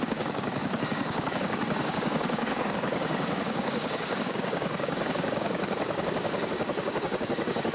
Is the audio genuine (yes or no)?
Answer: no